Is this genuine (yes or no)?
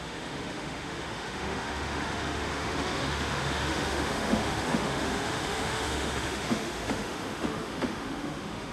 no